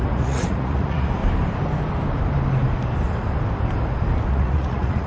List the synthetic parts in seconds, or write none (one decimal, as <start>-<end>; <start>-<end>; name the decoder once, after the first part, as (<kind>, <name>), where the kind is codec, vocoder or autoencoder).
0.0-1.2 (vocoder, Vocos); 4.3-5.1